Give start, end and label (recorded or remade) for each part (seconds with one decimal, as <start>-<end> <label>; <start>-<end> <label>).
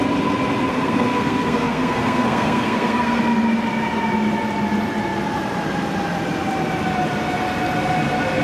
0.0-0.7 recorded; 0.7-3.2 remade; 3.2-8.4 recorded